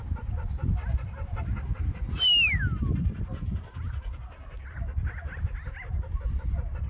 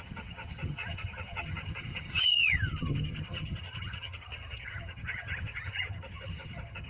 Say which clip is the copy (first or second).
second